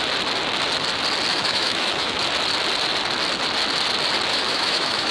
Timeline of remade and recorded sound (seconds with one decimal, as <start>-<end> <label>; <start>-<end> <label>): 0.0-1.3 recorded; 1.3-2.2 remade; 2.2-4.3 recorded; 4.3-5.1 remade